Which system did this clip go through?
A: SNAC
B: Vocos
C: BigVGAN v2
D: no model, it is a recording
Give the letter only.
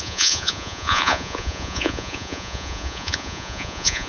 B